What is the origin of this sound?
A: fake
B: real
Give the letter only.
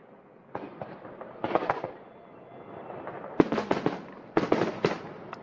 B